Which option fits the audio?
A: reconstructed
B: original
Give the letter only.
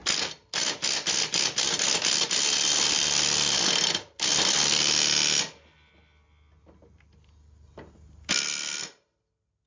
B